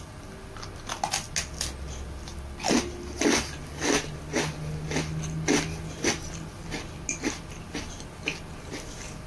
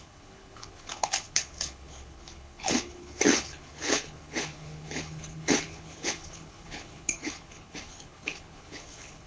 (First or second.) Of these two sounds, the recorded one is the first